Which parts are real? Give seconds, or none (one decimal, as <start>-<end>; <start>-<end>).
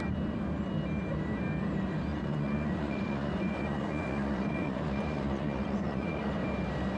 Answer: 0.0-2.1; 6.3-7.0